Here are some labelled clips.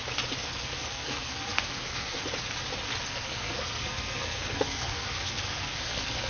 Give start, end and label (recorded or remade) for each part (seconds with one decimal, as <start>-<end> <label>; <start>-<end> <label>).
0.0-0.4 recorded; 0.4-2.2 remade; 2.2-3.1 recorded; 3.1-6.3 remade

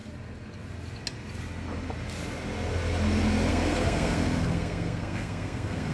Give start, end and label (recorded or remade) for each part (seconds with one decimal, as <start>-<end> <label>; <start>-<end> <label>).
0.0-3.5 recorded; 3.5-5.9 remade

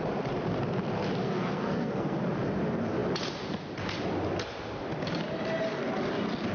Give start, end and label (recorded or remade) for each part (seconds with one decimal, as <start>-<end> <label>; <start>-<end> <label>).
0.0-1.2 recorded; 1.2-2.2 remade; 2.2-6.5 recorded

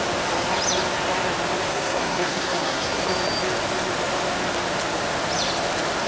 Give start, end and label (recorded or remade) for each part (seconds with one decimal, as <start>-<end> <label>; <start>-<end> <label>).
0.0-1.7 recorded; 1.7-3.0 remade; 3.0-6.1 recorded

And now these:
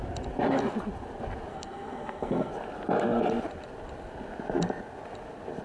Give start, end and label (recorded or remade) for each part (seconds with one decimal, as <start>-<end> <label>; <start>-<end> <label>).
0.0-1.5 recorded; 1.5-2.5 remade; 2.5-5.6 recorded